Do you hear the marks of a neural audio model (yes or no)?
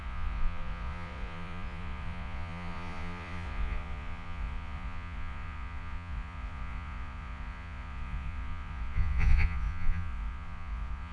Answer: yes